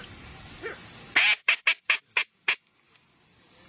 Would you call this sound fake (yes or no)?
no